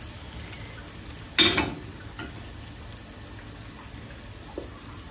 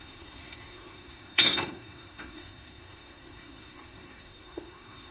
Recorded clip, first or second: first